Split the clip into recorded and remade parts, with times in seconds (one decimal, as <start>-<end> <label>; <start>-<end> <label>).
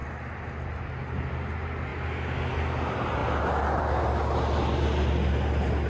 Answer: 0.0-5.9 recorded